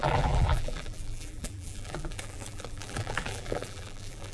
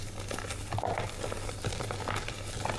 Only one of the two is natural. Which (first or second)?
second